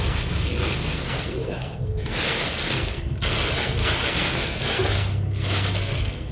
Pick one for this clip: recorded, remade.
remade